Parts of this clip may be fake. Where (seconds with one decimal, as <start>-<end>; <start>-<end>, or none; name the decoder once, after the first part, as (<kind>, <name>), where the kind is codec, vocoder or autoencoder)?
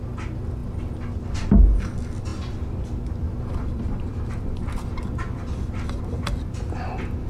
3.6-4.8 (vocoder, BigVGAN v2)